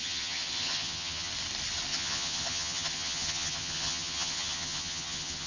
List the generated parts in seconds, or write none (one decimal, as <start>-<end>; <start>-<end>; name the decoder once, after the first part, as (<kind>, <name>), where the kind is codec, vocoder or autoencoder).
0.0-1.3 (vocoder, HiFi-GAN); 1.9-5.5